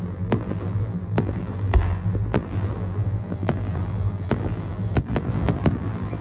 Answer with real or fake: fake